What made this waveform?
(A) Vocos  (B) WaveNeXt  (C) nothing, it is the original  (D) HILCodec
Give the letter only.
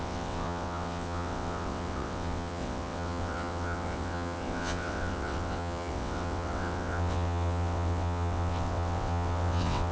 B